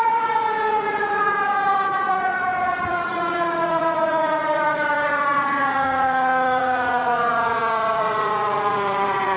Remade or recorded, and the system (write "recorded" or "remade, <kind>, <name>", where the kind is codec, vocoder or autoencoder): remade, vocoder, Vocos